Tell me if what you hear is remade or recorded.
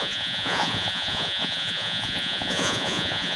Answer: remade